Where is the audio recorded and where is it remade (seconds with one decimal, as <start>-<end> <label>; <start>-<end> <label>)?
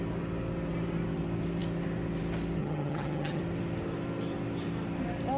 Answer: 0.0-2.6 recorded; 2.6-3.4 remade; 3.4-5.4 recorded